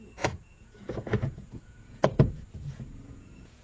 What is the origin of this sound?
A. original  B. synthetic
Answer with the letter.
B